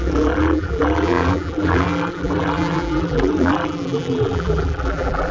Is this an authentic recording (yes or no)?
no